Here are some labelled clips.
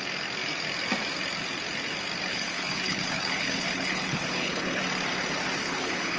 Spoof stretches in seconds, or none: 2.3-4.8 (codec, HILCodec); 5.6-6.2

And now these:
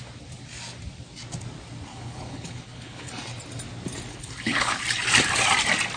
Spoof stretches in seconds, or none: 1.9-3.1 (codec, HILCodec); 4.1-4.8

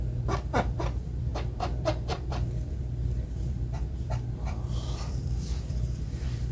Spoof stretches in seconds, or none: 0.0-6.5 (vocoder, BigVGAN v2)

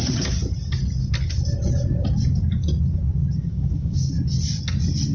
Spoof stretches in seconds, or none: 3.4-4.1 (codec, DAC)

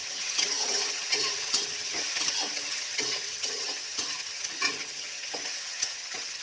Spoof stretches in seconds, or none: 0.0-6.4 (vocoder, HiFi-GAN)

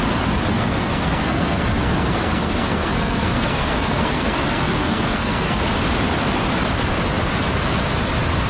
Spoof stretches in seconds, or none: 0.5-5.6 (codec, SNAC)

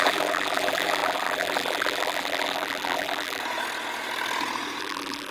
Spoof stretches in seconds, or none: 0.0-3.4 (vocoder, BigVGAN v2); 4.8-5.3

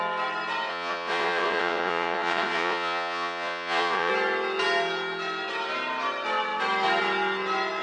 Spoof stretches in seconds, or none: 0.7-4.1 (vocoder, Vocos)